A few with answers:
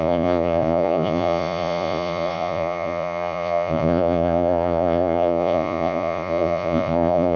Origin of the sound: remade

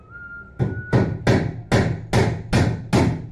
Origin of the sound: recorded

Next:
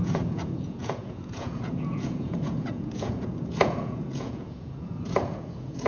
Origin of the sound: remade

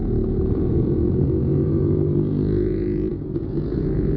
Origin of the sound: remade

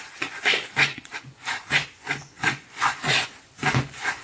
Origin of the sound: remade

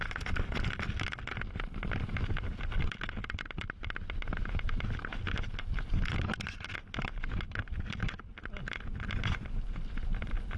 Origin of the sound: recorded